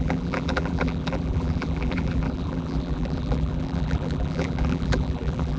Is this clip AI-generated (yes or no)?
yes